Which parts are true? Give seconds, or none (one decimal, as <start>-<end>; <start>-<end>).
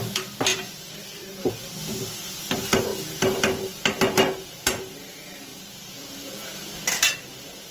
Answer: 0.0-0.5; 1.5-5.5; 6.4-7.7